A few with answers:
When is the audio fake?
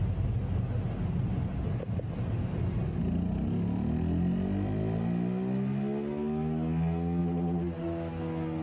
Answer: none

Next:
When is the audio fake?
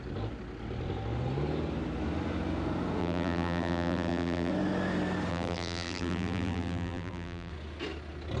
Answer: 3.0-4.5; 5.3-7.5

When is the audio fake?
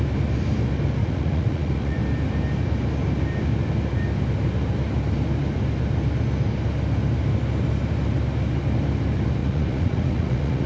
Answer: 1.0-2.0; 9.4-10.7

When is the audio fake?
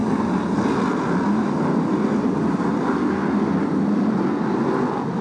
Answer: none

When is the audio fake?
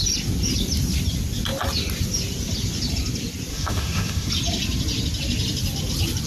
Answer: 3.5-4.3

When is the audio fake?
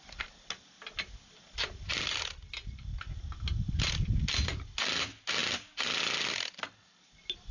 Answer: none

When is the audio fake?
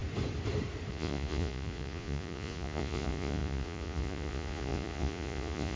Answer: 0.9-5.8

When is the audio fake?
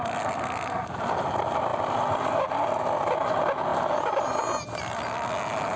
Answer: none